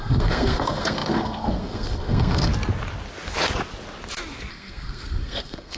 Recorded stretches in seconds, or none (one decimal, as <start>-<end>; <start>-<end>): 2.5-4.5